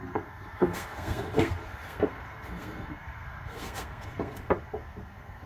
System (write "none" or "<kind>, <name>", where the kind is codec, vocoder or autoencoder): codec, SNAC